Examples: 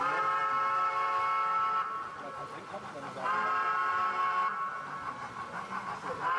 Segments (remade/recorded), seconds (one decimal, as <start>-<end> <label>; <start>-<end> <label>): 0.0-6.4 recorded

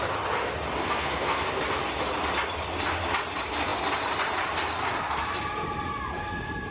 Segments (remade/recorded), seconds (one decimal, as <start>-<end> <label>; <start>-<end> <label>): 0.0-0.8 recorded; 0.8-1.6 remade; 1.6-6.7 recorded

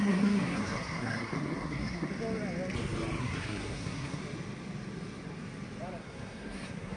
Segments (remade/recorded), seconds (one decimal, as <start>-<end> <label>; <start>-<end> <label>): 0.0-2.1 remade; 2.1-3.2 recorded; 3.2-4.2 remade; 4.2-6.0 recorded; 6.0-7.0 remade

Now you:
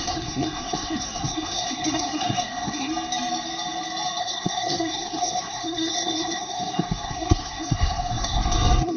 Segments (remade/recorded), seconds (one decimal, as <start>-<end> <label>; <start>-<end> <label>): 0.0-2.9 remade; 2.9-4.2 recorded; 4.2-9.0 remade